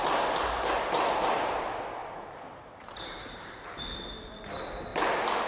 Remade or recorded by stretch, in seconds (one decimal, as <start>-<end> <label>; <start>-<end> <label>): 0.0-5.5 recorded